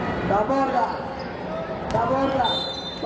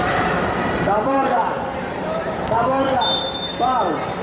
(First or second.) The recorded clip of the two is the first